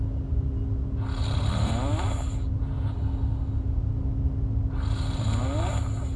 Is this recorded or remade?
recorded